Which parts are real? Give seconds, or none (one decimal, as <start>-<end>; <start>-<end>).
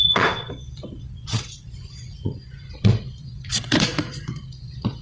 none